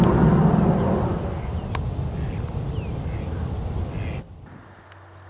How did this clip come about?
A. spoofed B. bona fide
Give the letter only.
B